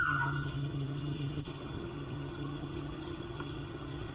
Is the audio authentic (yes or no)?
no